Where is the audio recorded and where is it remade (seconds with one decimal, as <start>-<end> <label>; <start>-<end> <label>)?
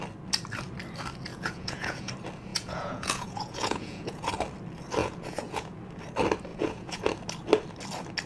0.0-1.3 recorded; 1.3-2.1 remade; 2.1-2.5 recorded; 2.5-4.3 remade; 4.3-5.0 recorded; 5.0-5.8 remade; 5.8-6.5 recorded; 6.5-7.0 remade; 7.0-8.3 recorded